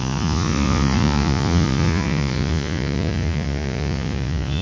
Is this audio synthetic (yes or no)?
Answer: yes